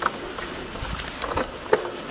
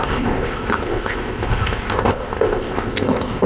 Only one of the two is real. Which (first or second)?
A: first